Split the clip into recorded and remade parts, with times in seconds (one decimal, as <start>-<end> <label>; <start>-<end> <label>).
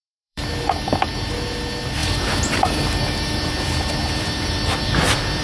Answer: 0.0-5.4 remade